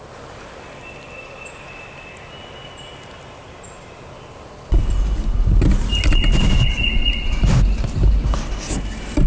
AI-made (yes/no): no